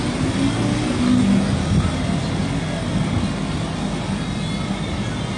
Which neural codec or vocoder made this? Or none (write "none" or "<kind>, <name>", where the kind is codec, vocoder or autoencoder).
none